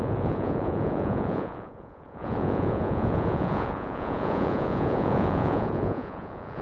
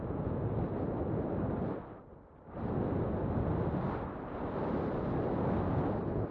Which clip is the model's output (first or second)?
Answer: first